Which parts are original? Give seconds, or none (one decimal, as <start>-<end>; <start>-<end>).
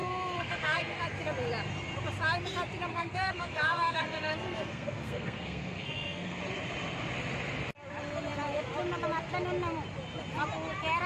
1.0-2.9; 6.4-11.1